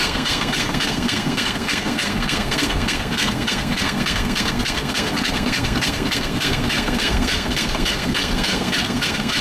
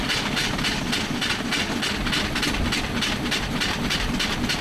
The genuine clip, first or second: second